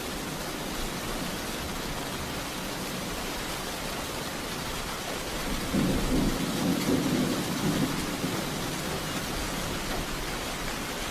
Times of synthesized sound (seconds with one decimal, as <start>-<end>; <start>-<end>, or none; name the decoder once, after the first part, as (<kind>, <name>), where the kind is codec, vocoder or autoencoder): none

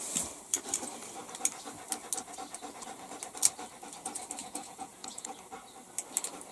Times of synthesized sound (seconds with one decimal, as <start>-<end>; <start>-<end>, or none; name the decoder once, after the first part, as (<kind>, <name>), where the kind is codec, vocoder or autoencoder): 4.4-5.3 (vocoder, Vocos)

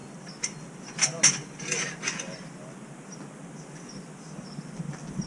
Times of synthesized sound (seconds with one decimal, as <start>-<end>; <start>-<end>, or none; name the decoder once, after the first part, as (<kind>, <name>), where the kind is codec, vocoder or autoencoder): none

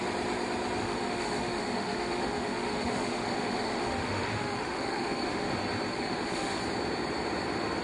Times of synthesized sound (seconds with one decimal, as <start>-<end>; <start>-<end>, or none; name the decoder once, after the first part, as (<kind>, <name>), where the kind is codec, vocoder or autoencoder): 0.8-5.5 (autoencoder, DAC-VAE); 5.9-6.6

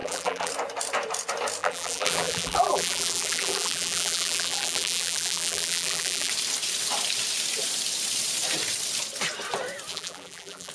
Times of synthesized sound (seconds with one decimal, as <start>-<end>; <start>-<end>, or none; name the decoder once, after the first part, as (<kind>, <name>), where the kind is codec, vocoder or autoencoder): 0.0-0.5 (vocoder, BigVGAN v2); 1.6-6.3; 9.9-10.7

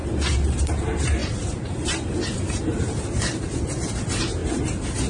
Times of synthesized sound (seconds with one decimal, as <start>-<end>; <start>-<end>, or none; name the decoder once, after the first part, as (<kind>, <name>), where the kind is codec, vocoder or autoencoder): 0.0-4.4 (vocoder, BigVGAN v2)

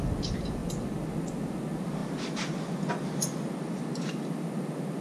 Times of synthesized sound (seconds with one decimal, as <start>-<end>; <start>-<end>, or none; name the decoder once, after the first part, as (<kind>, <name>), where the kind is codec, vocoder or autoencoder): none

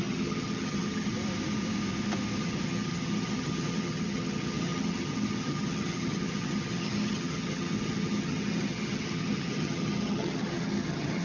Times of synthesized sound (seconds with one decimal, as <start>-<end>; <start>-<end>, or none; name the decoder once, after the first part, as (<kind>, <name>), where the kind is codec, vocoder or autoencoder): 0.0-1.1 (vocoder, HiFi-GAN); 2.4-11.2